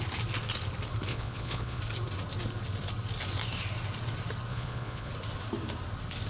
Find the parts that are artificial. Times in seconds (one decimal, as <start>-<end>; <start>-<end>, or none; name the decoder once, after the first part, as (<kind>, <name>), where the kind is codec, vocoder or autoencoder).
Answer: 1.1-1.8 (vocoder, Vocos); 4.5-5.1